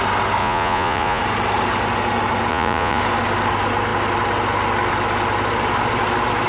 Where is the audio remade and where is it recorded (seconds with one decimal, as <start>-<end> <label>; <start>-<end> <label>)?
0.0-0.4 recorded; 0.4-1.2 remade; 1.2-2.5 recorded; 2.5-3.0 remade; 3.0-6.5 recorded